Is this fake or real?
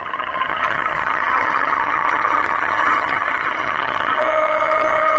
fake